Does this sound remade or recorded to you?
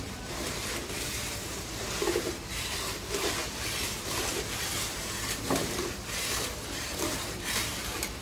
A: remade